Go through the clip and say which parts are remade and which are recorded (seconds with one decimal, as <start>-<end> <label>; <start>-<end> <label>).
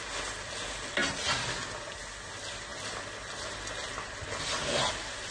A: 0.0-5.3 recorded